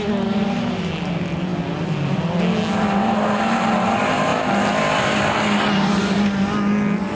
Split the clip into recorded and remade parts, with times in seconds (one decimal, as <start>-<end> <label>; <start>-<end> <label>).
0.0-4.3 recorded; 4.3-6.0 remade; 6.0-7.1 recorded